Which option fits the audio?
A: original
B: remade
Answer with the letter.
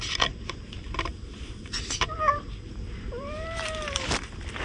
B